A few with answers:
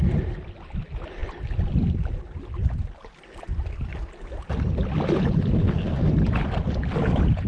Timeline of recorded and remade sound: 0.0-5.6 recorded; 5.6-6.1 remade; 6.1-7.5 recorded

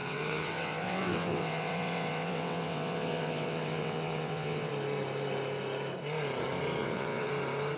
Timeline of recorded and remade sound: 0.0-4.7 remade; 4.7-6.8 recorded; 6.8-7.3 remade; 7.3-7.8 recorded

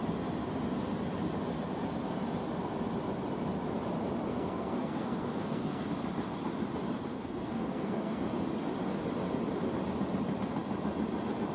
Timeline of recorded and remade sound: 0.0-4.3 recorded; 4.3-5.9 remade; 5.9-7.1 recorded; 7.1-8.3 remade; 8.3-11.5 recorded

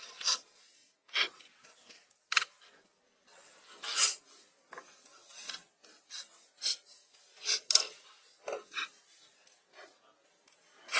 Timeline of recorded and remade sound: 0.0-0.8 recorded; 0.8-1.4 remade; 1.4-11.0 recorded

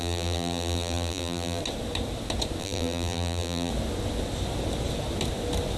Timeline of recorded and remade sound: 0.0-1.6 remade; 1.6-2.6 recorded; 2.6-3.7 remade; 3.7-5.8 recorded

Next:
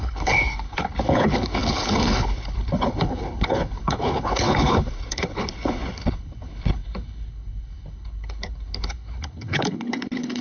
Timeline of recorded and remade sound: 0.0-10.4 remade

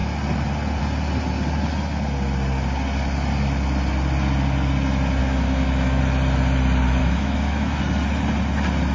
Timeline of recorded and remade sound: 0.0-5.2 recorded; 5.2-6.0 remade; 6.0-7.0 recorded; 7.0-7.8 remade; 7.8-8.9 recorded

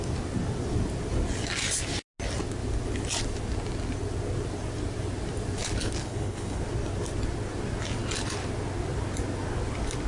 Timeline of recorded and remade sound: 0.0-6.0 recorded; 6.0-6.6 remade; 6.6-10.1 recorded